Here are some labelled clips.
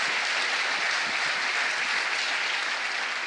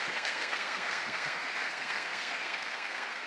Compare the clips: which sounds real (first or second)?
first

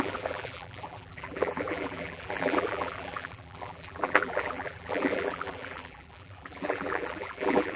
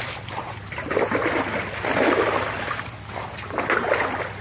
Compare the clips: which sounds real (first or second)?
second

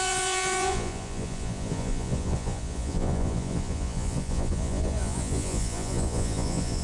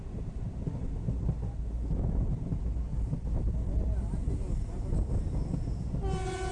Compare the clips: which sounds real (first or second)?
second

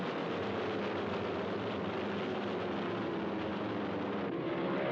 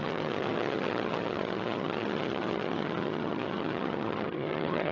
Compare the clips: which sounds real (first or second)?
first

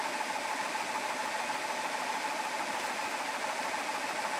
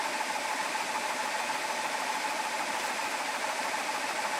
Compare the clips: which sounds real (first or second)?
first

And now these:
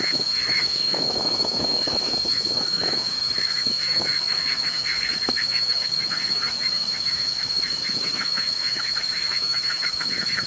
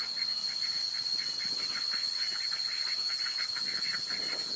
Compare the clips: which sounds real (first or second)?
second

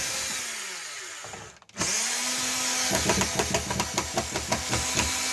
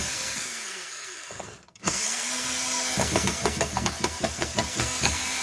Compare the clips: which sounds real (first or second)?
first